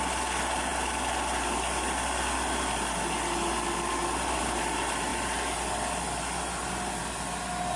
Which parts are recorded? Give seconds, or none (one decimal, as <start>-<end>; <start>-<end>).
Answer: 0.0-7.8

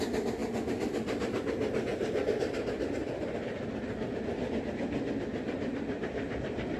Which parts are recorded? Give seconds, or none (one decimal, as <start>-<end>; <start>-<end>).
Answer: 0.0-6.8

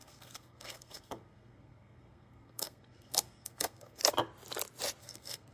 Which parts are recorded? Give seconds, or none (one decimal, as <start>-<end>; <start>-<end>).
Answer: 4.0-5.0

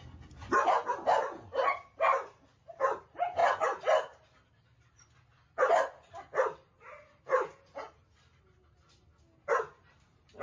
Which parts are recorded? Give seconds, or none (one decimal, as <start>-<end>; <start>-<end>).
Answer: 0.0-10.4

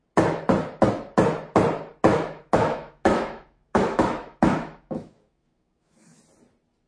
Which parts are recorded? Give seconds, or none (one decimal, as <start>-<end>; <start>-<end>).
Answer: 0.0-2.1; 6.2-6.9

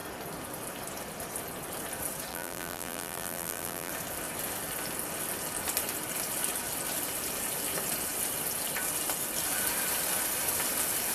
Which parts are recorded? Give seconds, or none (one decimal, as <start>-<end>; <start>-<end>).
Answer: 0.0-2.3; 3.9-11.1